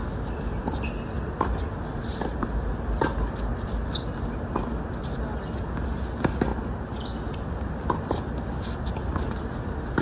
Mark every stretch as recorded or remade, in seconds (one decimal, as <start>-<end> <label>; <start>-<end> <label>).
0.0-10.0 recorded